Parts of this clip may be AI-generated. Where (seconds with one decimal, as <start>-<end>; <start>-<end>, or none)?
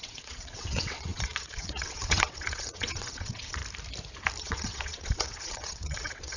0.0-3.6; 4.4-6.4